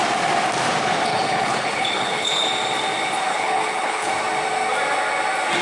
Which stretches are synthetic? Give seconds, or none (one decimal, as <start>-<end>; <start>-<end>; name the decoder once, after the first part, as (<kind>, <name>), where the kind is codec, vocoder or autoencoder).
1.1-2.5 (codec, HILCodec); 3.3-4.1